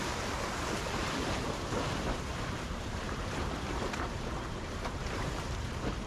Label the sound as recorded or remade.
remade